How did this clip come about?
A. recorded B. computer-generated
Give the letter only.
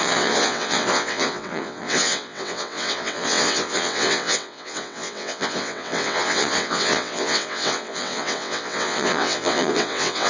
B